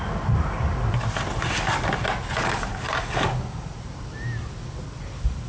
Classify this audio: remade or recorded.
recorded